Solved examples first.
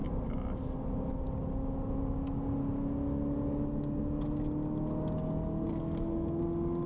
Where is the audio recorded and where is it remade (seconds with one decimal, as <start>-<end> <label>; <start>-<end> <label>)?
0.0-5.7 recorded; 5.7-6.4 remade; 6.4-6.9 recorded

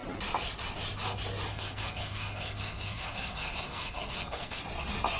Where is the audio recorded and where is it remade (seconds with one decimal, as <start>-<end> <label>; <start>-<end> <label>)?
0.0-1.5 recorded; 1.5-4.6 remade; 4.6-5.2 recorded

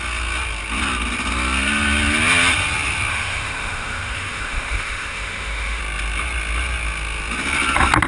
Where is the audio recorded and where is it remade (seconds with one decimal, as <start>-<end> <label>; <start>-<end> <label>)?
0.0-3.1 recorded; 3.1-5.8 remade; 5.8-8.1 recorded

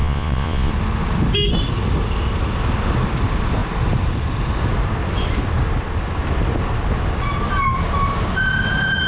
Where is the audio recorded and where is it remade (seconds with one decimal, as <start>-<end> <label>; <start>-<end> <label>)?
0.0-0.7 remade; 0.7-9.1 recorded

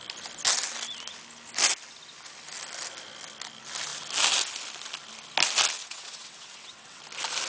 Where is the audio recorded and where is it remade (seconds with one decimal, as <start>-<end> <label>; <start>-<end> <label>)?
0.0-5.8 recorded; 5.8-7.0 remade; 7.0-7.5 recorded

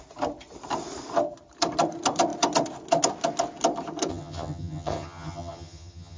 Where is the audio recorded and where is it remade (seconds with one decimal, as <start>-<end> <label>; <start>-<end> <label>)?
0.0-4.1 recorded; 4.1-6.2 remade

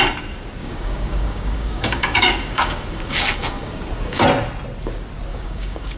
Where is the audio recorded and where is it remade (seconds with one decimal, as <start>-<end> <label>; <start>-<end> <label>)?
0.0-0.6 recorded; 0.6-4.2 remade; 4.2-5.3 recorded; 5.3-6.0 remade

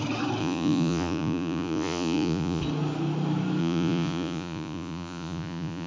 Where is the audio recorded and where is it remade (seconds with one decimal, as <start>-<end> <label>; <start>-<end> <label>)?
0.0-0.4 recorded; 0.4-2.6 remade; 2.6-3.6 recorded; 3.6-5.9 remade